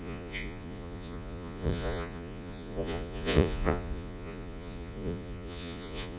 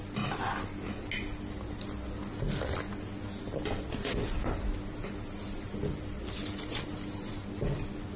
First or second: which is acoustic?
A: second